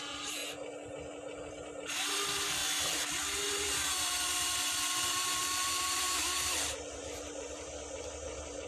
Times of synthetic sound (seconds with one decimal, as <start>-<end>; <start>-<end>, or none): 0.0-0.4; 1.5-2.6; 3.5-8.7